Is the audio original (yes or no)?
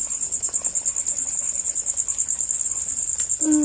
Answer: yes